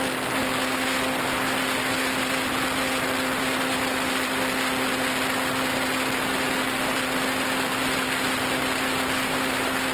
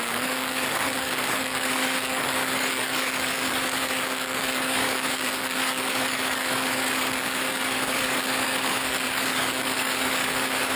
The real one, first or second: first